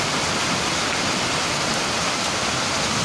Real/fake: real